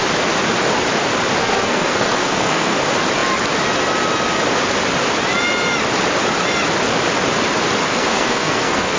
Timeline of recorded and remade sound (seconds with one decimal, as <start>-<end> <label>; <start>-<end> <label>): 0.0-1.4 recorded; 1.4-2.8 remade; 2.8-7.9 recorded; 7.9-9.0 remade